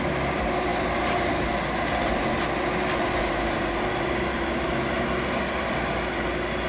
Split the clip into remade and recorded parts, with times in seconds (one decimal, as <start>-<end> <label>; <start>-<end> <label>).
0.0-6.7 recorded